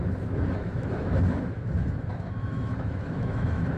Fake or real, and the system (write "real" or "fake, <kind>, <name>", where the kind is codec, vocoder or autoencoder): fake, autoencoder, DAC-VAE